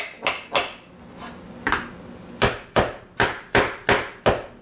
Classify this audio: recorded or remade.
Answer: recorded